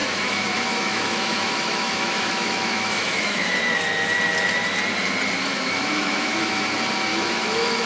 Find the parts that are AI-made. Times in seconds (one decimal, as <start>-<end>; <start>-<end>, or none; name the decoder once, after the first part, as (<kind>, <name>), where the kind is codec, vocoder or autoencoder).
0.0-3.5 (autoencoder, DAC-VAE); 5.4-6.6; 7.1-7.9